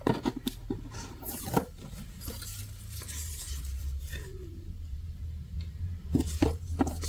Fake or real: fake